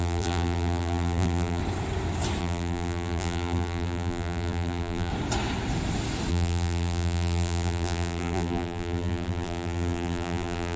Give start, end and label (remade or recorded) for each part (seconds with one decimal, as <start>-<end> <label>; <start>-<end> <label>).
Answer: 0.0-1.6 remade; 1.6-2.4 recorded; 2.4-5.1 remade; 5.1-6.3 recorded; 6.3-10.8 remade